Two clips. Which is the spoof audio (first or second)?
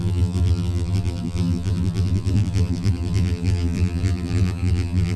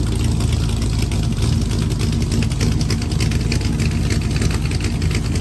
first